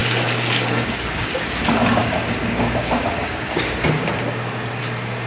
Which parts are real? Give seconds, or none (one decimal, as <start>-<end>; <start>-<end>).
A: 1.3-2.0; 3.6-5.3